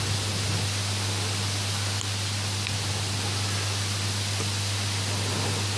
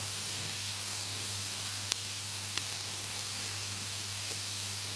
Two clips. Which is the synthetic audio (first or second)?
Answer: second